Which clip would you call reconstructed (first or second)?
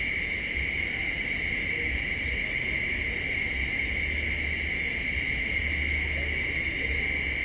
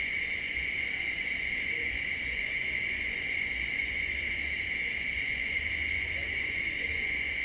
second